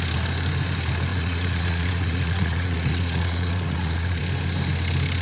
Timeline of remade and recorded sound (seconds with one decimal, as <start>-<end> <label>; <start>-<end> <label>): 0.0-1.1 recorded; 1.1-4.2 remade; 4.2-5.2 recorded